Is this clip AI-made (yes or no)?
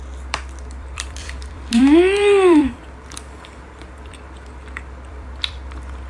yes